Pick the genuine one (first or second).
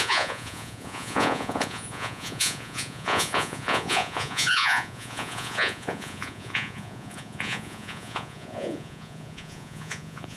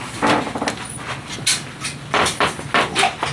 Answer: second